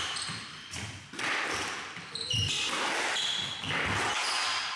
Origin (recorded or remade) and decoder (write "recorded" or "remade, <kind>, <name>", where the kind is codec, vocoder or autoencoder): recorded